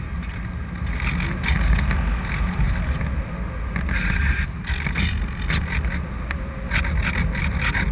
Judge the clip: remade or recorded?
recorded